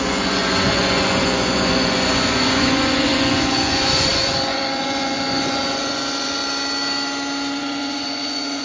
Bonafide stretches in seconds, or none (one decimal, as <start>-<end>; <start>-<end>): 6.4-7.6